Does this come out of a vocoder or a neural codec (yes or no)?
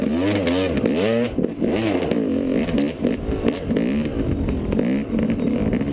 no